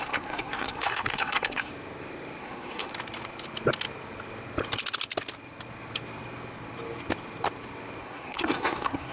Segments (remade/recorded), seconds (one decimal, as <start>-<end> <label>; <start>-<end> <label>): 0.0-1.7 remade; 1.7-2.4 recorded; 2.4-2.9 remade; 2.9-8.0 recorded; 8.0-9.1 remade